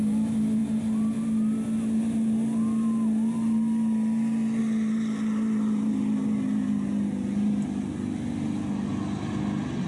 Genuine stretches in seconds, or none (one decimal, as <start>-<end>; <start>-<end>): 0.0-9.9